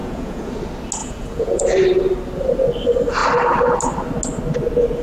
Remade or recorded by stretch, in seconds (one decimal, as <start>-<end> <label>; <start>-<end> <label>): 0.0-0.5 remade; 0.5-1.0 recorded; 1.0-1.6 remade; 1.6-5.0 recorded